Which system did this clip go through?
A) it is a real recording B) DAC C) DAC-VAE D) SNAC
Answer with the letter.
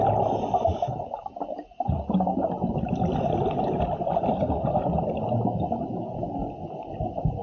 A